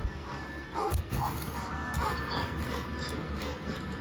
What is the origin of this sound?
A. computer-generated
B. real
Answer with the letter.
A